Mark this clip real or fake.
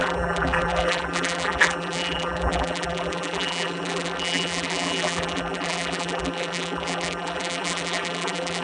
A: fake